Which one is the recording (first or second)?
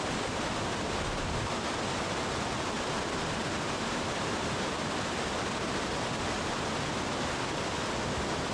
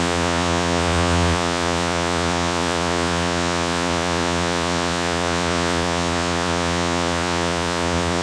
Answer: first